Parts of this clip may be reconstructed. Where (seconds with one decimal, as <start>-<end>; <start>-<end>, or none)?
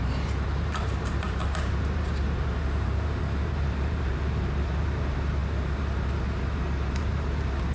0.0-7.7